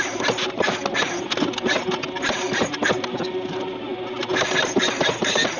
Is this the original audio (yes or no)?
yes